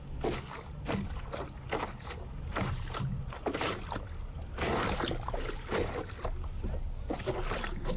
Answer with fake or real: real